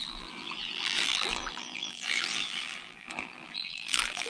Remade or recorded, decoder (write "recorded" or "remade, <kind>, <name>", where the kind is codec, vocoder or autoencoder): remade, vocoder, BigVGAN v2